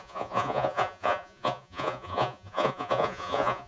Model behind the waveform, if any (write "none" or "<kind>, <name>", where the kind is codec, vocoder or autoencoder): vocoder, Vocos